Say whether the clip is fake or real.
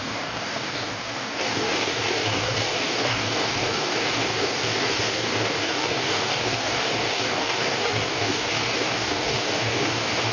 fake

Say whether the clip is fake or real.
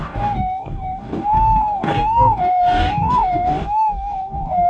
fake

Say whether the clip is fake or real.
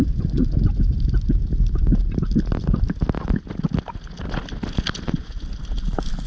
real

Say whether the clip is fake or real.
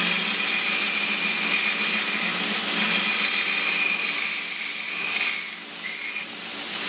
real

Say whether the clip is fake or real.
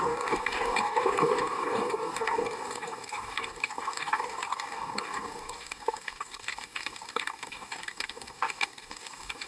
fake